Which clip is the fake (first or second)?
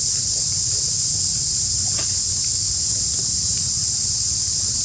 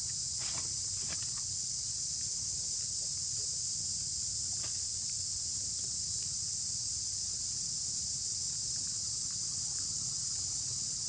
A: first